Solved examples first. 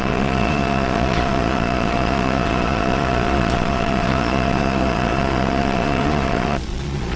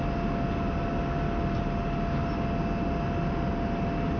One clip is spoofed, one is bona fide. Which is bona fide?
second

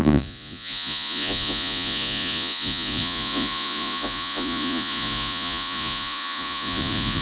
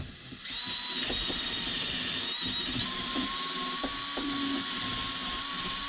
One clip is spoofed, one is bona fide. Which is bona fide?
second